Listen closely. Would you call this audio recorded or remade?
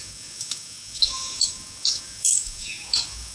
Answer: remade